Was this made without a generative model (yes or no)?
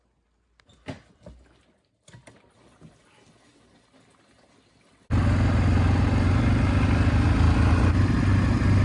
yes